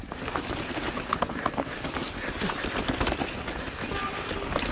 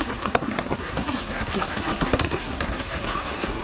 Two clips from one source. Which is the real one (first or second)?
first